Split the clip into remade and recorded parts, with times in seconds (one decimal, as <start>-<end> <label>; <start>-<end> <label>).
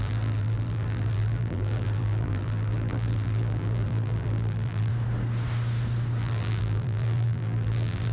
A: 0.0-4.9 remade; 4.9-6.2 recorded; 6.2-8.1 remade